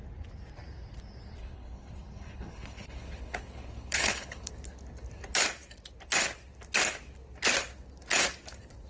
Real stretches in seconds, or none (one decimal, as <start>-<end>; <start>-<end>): 0.0-1.4; 4.5-8.9